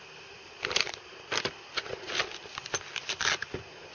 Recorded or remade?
recorded